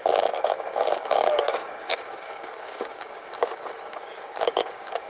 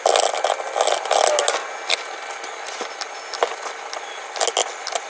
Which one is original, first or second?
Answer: second